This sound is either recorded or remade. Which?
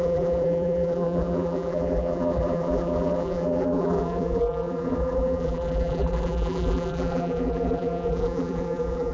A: remade